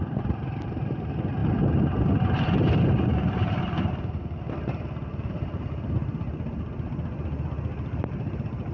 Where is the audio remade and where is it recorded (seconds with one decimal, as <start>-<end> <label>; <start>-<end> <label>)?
0.0-8.7 recorded